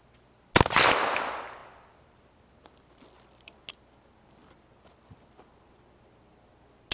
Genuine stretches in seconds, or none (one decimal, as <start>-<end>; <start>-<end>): 0.0-6.9